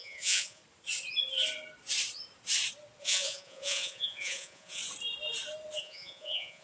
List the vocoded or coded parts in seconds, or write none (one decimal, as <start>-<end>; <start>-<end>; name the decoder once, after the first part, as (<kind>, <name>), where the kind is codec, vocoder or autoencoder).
0.0-0.6 (vocoder, Vocos); 3.0-4.8; 5.8-6.6